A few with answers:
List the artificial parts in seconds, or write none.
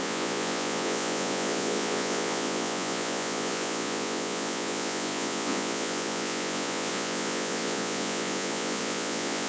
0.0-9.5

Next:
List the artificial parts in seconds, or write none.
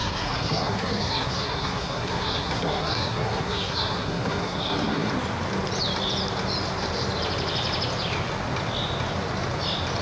0.0-5.1